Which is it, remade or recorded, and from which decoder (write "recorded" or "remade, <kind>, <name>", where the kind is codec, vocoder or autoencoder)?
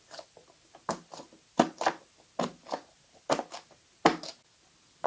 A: recorded